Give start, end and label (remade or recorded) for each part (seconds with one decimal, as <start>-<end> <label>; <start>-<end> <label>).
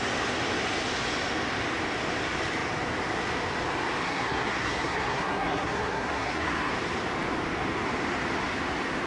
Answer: 0.0-4.0 recorded; 4.0-6.7 remade; 6.7-9.1 recorded